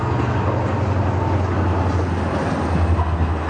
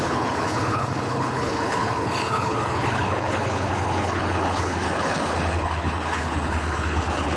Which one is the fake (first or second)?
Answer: second